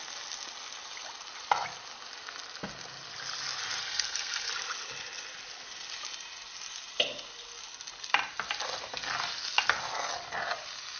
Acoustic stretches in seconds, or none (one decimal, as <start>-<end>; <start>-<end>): 0.0-3.8; 4.5-11.0